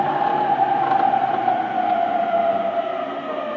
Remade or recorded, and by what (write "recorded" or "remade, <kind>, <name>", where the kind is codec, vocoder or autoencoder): recorded